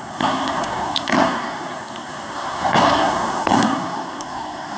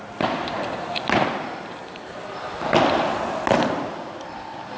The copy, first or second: first